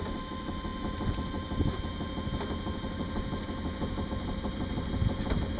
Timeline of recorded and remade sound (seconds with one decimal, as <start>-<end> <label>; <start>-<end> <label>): 0.0-5.6 recorded